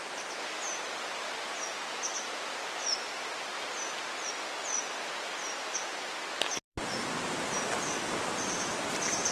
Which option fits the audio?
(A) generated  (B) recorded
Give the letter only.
B